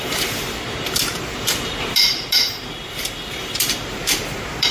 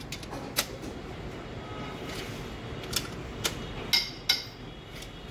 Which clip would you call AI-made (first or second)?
first